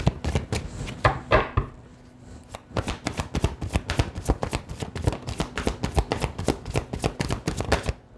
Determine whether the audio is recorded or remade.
recorded